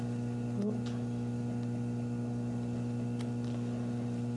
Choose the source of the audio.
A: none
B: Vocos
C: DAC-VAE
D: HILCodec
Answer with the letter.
A